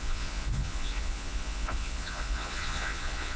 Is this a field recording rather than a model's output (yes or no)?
no